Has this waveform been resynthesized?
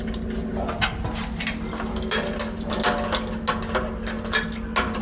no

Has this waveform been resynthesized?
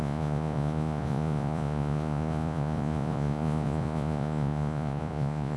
yes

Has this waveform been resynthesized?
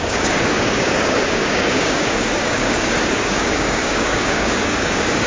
yes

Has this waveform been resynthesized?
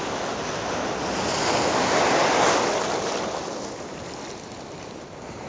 no